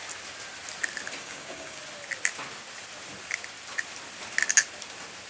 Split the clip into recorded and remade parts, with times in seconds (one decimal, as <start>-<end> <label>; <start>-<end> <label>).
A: 0.0-1.2 recorded; 1.2-1.8 remade; 1.8-5.3 recorded